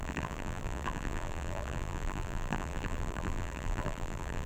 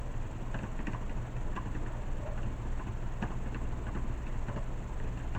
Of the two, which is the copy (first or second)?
first